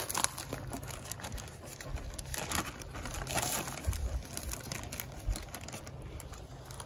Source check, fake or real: real